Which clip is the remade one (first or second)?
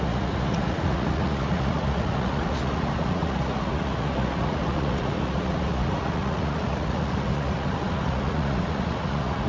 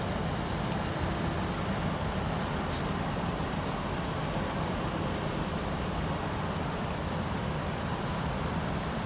first